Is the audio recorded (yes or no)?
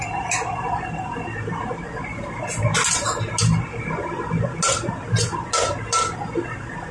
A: yes